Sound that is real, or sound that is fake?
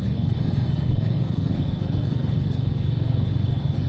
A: fake